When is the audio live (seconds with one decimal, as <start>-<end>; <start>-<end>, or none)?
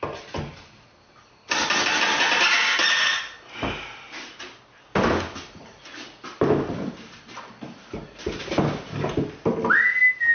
0.0-10.3